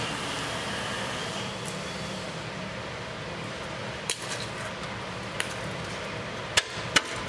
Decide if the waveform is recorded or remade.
remade